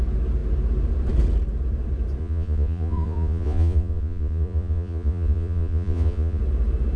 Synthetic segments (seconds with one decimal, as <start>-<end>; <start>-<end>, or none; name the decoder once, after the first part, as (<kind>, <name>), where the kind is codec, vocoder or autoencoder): 2.2-6.4 (vocoder, Vocos)